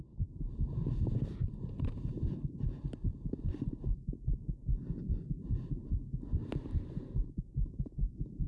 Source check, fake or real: fake